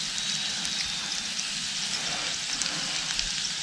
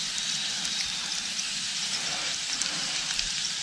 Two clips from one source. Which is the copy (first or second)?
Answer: second